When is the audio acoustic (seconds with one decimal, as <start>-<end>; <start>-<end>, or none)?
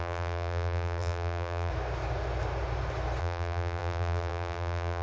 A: 1.7-3.2